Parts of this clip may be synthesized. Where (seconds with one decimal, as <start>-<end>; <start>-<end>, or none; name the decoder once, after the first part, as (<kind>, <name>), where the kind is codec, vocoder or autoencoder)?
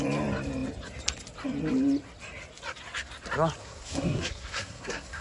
3.6-5.2 (codec, SNAC)